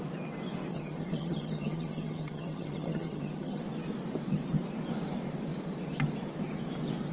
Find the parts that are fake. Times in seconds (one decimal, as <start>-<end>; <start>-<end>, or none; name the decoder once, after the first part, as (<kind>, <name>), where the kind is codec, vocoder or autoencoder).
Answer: 0.7-3.6 (vocoder, HiFi-GAN)